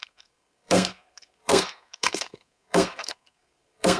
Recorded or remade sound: remade